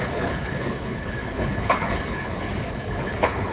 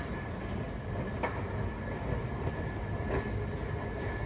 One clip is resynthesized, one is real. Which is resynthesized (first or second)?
first